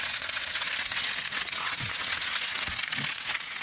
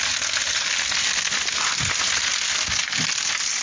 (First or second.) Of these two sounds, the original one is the second